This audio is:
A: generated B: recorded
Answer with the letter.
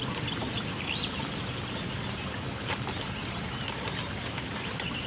A